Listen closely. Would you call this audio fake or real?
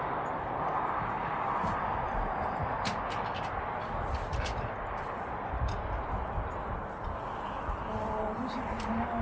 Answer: real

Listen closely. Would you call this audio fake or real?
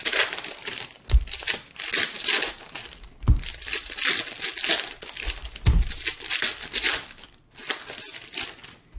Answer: real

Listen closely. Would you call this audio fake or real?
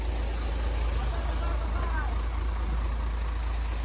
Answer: real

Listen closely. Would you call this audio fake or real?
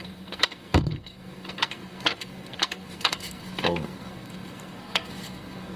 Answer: fake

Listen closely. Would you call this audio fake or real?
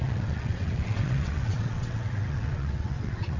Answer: fake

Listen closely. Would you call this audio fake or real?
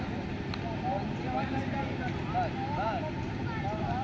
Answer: real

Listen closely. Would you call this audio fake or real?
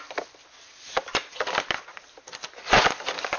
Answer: real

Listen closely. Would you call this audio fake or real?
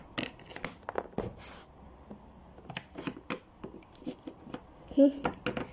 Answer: real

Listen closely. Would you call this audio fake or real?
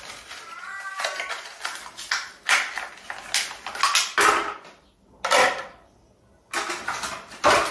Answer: real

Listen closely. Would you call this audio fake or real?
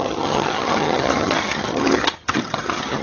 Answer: fake